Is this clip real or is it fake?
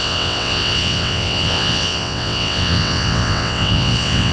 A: fake